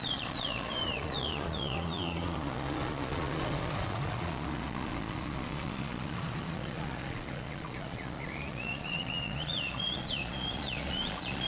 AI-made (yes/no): yes